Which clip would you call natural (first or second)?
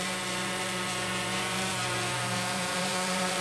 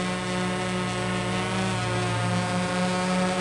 second